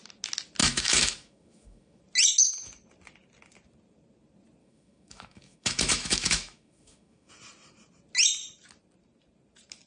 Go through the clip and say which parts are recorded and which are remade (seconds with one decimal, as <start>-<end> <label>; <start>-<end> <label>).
0.0-0.6 recorded; 0.6-2.0 remade; 2.0-4.6 recorded; 4.6-7.3 remade; 7.3-9.9 recorded